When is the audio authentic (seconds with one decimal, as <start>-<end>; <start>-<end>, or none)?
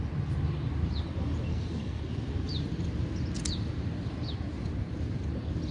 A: 0.0-1.5; 2.0-5.7